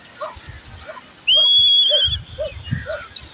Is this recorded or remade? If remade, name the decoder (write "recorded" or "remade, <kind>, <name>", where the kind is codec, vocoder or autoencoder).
recorded